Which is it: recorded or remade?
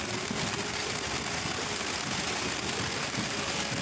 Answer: recorded